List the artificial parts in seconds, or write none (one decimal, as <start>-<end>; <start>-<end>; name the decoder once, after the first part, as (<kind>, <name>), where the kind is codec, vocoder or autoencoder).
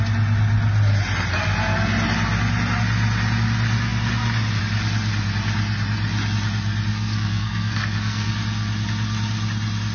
6.9-8.3 (codec, SNAC)